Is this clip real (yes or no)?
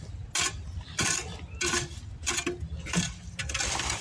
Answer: yes